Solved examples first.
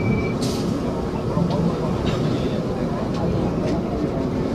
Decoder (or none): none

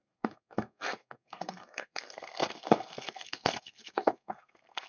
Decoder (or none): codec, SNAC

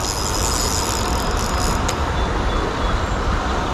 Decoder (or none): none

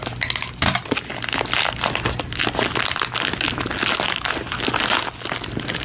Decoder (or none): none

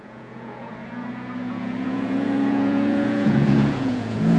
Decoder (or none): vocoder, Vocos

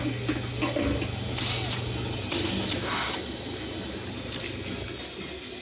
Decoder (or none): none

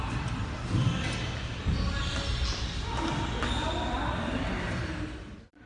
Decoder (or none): none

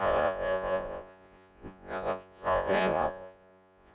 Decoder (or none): vocoder, Vocos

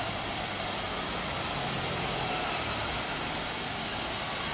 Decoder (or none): none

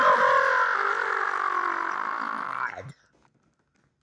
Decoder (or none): none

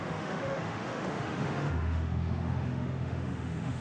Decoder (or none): autoencoder, DAC-VAE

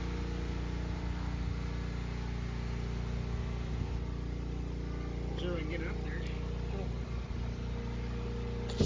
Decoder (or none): none